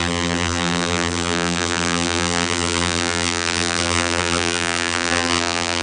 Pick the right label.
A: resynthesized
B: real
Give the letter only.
A